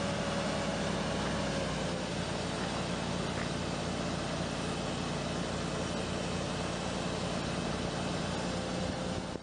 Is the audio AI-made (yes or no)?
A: no